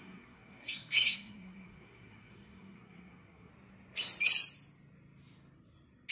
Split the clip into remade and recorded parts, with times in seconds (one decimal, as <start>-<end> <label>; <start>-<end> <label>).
0.0-3.5 remade; 3.5-6.1 recorded